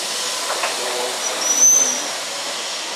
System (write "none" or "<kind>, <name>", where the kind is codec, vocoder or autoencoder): none